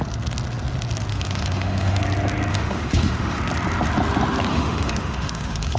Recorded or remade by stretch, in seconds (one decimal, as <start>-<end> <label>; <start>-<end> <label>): 0.0-1.1 recorded; 1.1-2.0 remade; 2.0-2.5 recorded; 2.5-3.4 remade; 3.4-4.5 recorded; 4.5-5.8 remade